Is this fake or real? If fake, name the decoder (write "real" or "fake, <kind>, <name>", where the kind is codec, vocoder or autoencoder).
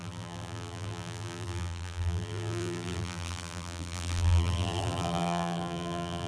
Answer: fake, vocoder, BigVGAN v2